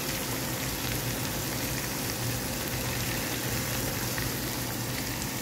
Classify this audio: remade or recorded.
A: recorded